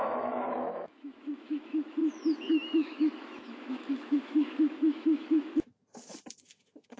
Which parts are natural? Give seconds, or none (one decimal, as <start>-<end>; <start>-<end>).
none